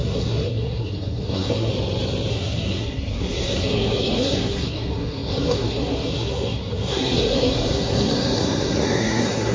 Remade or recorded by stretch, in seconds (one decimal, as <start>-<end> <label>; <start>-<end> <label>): 0.0-1.7 remade; 1.7-2.3 recorded; 2.3-9.5 remade